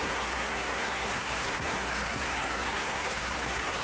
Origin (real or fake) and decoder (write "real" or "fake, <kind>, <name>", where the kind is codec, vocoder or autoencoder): fake, codec, SNAC